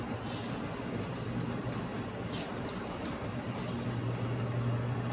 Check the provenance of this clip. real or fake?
real